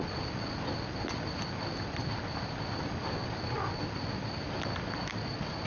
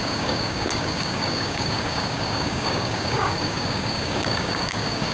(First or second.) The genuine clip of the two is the first